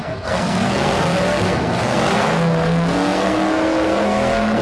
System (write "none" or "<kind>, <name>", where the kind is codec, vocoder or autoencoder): codec, SNAC